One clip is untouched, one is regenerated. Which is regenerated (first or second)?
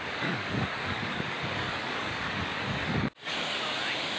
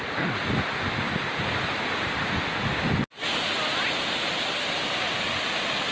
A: first